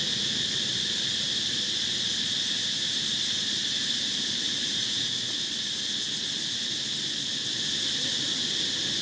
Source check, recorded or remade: recorded